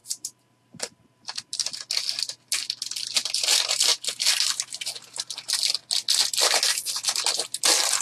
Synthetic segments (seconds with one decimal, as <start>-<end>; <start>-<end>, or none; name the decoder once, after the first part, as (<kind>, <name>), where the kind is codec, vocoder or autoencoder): 0.0-1.4 (vocoder, BigVGAN v2)